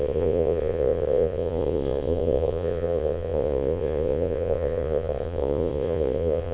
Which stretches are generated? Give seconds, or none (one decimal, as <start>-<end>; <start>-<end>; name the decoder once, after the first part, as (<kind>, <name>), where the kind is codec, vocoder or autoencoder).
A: 0.0-6.5 (vocoder, Vocos)